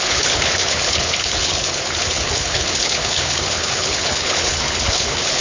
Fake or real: fake